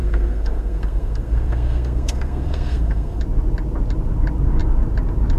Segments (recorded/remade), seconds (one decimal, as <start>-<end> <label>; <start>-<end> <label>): 0.0-3.2 remade; 3.2-5.4 recorded